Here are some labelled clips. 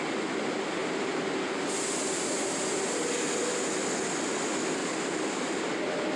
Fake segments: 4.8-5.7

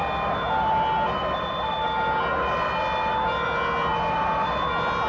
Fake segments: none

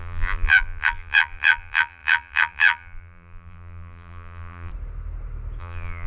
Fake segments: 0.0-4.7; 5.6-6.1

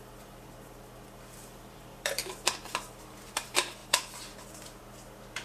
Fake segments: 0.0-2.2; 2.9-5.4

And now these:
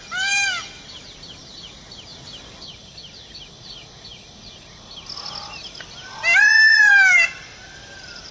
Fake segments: 0.0-2.1; 6.4-8.3

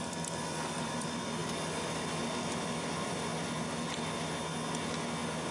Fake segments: 0.0-1.4; 2.2-3.3